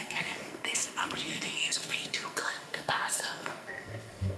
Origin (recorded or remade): remade